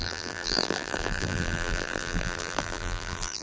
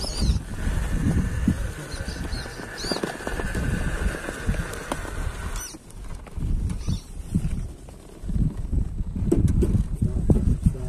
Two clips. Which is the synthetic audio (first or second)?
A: first